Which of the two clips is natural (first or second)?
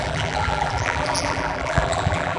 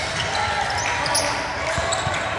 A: second